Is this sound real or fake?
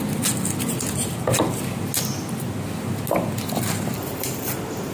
real